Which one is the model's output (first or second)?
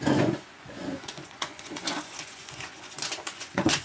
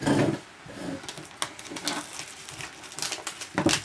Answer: first